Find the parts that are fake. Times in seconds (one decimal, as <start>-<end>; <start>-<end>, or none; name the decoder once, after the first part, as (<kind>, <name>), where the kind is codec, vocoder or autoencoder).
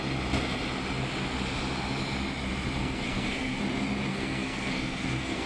2.8-3.6 (codec, SNAC); 4.1-5.5